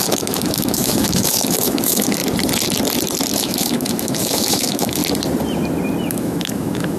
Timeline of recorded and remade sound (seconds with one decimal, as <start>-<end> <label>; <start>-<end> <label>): 0.0-2.2 remade; 2.2-3.4 recorded; 3.4-5.0 remade; 5.0-6.1 recorded; 6.1-7.0 remade